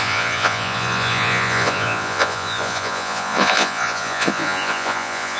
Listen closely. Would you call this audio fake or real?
fake